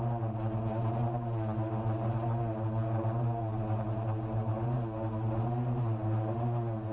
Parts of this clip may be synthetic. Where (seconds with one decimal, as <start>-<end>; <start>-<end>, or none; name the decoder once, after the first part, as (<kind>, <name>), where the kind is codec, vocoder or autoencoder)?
none